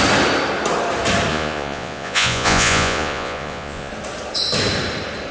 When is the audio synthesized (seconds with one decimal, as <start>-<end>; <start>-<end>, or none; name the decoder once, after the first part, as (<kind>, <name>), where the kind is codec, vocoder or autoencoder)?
1.3-3.9 (vocoder, Vocos)